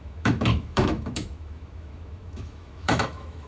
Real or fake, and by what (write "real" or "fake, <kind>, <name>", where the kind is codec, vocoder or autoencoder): fake, autoencoder, DAC-VAE